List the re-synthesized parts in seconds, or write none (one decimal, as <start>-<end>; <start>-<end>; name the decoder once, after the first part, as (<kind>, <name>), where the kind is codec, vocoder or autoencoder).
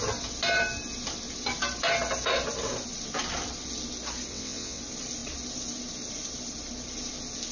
4.3-4.8 (vocoder, WaveNeXt)